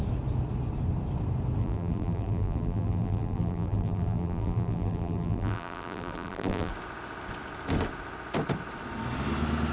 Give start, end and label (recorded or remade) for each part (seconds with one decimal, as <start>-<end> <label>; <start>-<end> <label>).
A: 0.0-1.6 recorded; 1.6-6.7 remade; 6.7-9.7 recorded